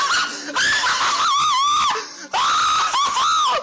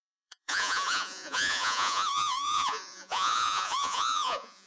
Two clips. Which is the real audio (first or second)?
first